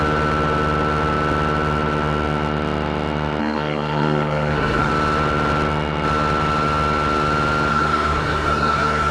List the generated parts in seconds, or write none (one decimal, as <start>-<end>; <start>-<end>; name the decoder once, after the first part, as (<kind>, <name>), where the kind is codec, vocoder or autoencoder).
3.4-4.9 (codec, SNAC); 7.7-9.1